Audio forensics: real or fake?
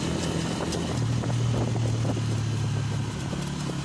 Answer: real